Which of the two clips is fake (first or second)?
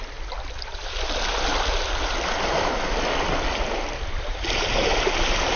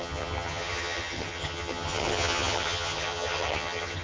second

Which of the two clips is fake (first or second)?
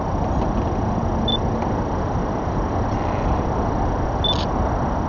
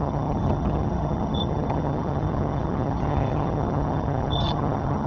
second